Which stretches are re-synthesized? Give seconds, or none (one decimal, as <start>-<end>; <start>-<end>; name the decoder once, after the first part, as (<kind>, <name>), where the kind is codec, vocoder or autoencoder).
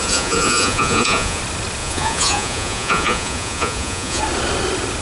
0.0-1.4 (vocoder, Vocos); 1.8-4.2